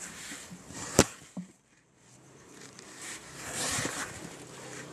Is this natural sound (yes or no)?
no